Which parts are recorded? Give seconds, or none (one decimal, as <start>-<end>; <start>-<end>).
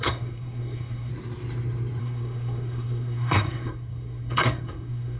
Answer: 1.1-2.0